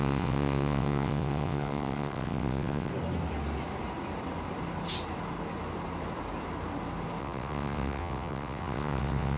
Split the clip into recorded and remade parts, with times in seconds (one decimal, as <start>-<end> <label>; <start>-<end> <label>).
0.0-2.9 remade; 2.9-7.2 recorded; 7.2-9.4 remade